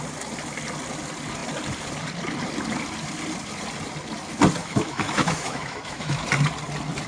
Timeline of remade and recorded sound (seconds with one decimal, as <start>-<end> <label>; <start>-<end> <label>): 0.0-4.6 recorded; 4.6-6.2 remade; 6.2-7.1 recorded